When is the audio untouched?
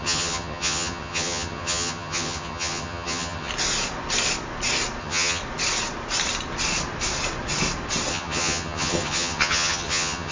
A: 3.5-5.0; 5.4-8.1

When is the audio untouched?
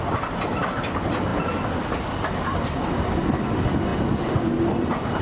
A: 0.0-5.2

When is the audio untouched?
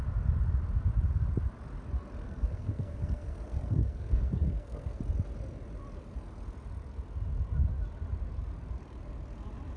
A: 0.0-2.2; 5.0-9.8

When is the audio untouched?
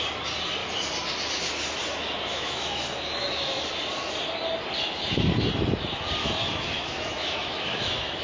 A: 0.0-2.3; 3.7-6.2